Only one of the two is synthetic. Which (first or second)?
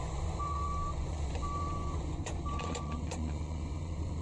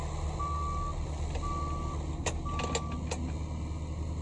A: first